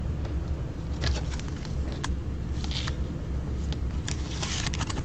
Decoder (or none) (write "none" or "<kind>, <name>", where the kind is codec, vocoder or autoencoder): none